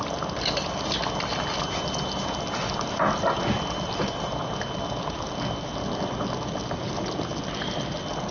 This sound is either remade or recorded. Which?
recorded